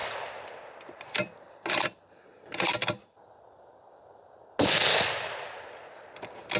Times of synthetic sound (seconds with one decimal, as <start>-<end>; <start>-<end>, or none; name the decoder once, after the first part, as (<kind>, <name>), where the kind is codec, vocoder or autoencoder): none